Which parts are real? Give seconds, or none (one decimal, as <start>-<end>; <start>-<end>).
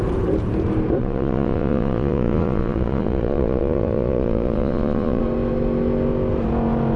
0.0-1.0; 5.2-7.0